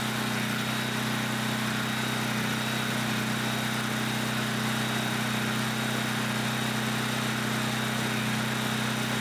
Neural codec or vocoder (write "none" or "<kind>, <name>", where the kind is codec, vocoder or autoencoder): none